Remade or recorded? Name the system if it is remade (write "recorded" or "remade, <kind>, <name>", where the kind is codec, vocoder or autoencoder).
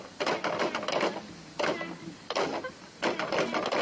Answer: recorded